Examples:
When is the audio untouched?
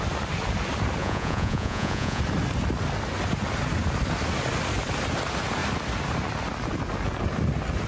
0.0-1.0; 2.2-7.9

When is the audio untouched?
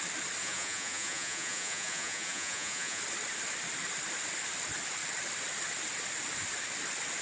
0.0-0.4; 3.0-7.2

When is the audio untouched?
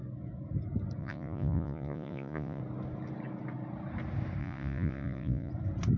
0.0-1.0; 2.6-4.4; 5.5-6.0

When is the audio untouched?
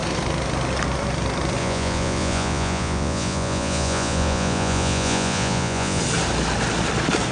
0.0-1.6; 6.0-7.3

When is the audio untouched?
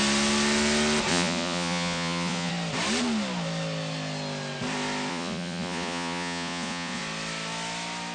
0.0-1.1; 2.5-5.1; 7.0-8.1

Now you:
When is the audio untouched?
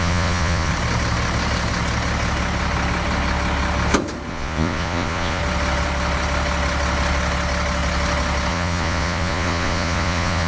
0.7-4.3; 5.4-8.5